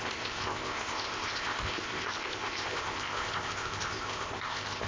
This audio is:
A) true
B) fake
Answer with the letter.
B